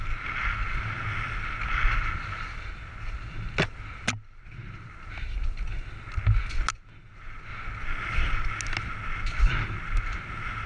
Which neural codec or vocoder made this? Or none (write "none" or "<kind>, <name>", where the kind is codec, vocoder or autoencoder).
none